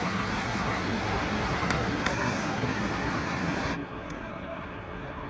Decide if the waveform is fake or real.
fake